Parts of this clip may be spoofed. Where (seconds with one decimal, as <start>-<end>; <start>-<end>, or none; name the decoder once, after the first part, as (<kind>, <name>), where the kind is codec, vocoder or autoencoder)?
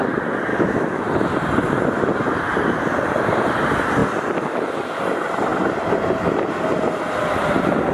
0.5-1.1 (autoencoder, DAC-VAE)